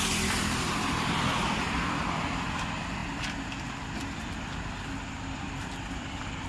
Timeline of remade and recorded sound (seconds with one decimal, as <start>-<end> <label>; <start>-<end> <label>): 0.0-3.0 remade; 3.0-5.4 recorded; 5.4-6.5 remade